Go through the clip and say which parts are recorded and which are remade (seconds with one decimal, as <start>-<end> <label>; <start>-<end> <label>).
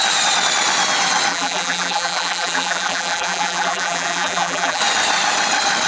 0.0-1.3 recorded; 1.3-4.8 remade; 4.8-5.9 recorded